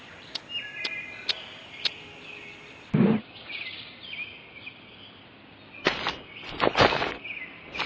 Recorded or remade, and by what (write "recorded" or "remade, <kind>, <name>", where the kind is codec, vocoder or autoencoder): recorded